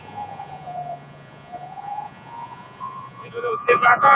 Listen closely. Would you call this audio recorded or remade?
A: remade